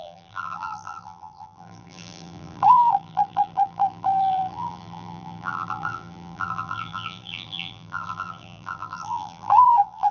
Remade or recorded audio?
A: remade